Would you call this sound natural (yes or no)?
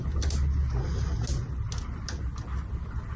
yes